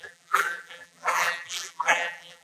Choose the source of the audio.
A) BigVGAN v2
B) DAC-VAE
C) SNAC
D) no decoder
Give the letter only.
A